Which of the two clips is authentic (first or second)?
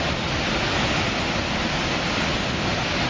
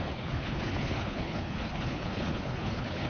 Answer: first